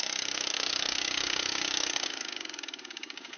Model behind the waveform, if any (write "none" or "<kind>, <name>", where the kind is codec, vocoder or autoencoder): codec, DAC